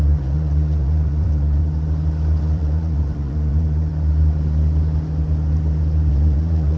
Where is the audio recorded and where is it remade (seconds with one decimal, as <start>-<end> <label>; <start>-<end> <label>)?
0.0-1.6 remade; 1.6-2.4 recorded; 2.4-3.9 remade; 3.9-6.1 recorded; 6.1-6.8 remade